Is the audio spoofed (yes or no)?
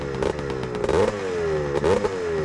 no